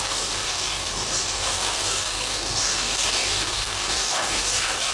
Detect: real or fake fake